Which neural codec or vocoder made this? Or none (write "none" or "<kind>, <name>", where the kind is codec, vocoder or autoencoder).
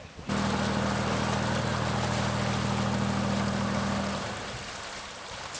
none